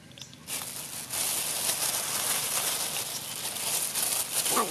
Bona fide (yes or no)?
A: yes